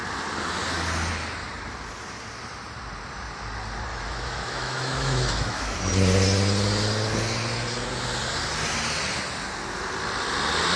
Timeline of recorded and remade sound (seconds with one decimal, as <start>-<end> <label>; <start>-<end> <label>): 0.0-3.9 recorded; 3.9-5.9 remade; 5.9-10.8 recorded